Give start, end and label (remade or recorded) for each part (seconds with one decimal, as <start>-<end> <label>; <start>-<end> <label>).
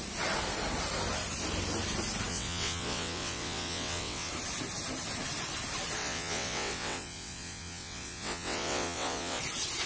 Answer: 0.0-2.3 recorded; 2.3-4.3 remade; 4.3-6.0 recorded; 6.0-9.4 remade; 9.4-9.9 recorded